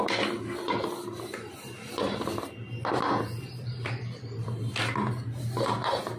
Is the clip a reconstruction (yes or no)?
no